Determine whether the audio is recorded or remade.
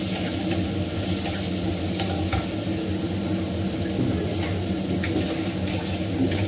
recorded